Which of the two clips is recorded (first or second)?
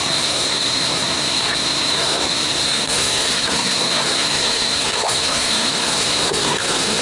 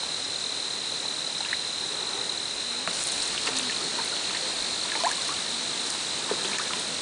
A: second